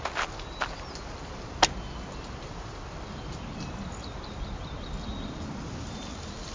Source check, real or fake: real